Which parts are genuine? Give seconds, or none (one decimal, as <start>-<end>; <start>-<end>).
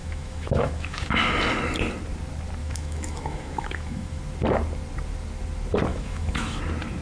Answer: 1.1-2.6; 4.2-5.9; 6.6-7.0